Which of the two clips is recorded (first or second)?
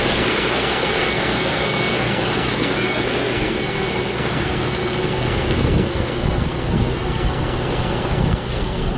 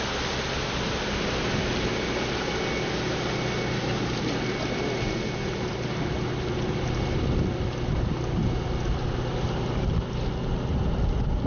second